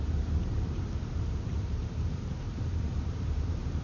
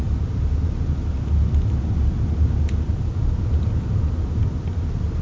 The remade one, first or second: first